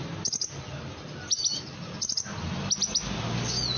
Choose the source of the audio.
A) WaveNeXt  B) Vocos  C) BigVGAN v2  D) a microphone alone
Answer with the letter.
D